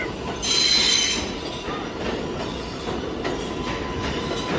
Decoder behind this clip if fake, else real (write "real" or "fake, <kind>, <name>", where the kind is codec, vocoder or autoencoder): real